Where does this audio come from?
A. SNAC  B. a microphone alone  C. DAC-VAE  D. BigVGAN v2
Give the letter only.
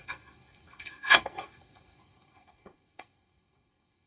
A